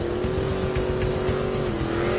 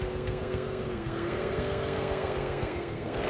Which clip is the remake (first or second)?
second